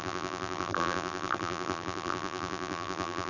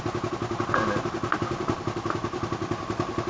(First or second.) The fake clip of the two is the first